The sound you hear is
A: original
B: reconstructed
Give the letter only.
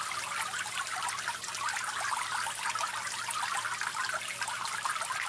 A